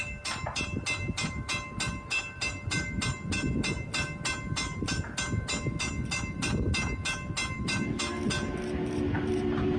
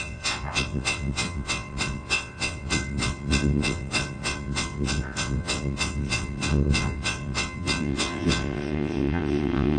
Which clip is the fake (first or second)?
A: second